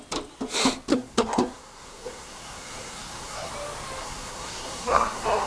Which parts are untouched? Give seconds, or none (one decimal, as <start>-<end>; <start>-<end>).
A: 0.0-0.9; 3.5-4.0